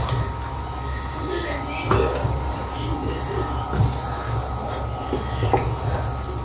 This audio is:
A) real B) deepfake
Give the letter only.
A